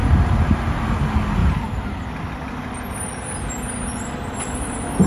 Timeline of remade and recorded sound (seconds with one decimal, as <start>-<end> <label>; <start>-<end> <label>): 0.0-0.9 remade; 0.9-1.4 recorded; 1.4-2.0 remade; 2.0-5.1 recorded

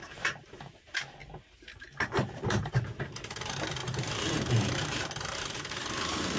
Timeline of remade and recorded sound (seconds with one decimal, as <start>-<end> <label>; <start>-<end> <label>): 0.0-1.2 remade; 1.2-1.8 recorded; 1.8-6.4 remade

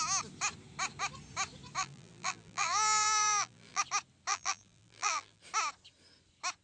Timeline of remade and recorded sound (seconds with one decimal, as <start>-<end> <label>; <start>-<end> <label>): 0.0-1.8 recorded; 1.8-3.8 remade; 3.8-4.3 recorded; 4.3-5.4 remade; 5.4-6.6 recorded

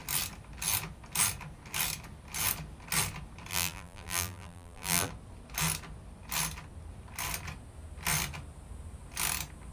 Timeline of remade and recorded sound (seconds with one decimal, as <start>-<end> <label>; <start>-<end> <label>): 0.0-3.5 recorded; 3.5-5.1 remade; 5.1-9.7 recorded

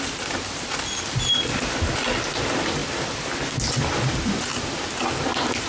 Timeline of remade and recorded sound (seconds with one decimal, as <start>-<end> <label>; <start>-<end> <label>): 0.0-5.7 recorded

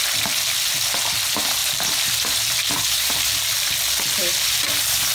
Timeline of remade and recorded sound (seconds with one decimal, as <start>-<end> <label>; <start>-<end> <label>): 0.0-1.6 recorded; 1.6-3.3 remade; 3.3-4.2 recorded; 4.2-5.1 remade